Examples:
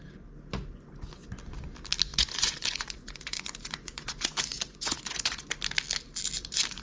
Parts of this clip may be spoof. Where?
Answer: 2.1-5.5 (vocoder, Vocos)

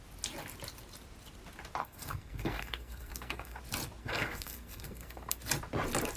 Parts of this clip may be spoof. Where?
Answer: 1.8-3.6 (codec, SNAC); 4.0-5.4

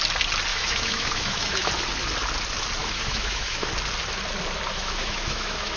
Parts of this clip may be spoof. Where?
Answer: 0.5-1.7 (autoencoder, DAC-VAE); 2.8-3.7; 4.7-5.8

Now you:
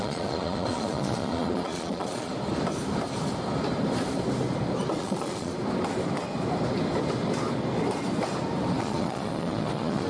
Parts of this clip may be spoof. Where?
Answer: 0.0-2.3 (vocoder, Vocos); 5.0-5.5; 8.8-10.1